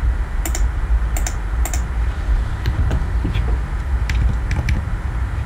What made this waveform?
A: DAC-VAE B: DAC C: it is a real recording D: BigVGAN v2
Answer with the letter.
C